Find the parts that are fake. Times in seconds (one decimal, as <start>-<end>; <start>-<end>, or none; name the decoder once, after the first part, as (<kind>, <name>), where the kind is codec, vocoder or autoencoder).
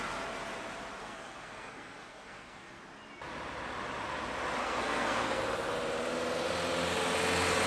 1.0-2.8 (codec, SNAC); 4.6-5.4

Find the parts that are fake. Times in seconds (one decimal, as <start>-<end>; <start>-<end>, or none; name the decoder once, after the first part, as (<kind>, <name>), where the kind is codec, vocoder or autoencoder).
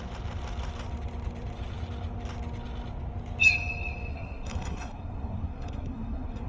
4.1-6.5 (codec, SNAC)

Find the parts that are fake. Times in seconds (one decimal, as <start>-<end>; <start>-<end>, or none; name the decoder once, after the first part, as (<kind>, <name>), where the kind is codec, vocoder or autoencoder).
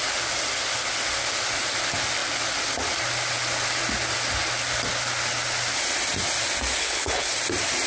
6.8-7.3 (codec, HILCodec)